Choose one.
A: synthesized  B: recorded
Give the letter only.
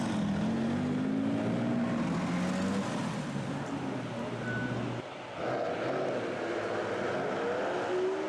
B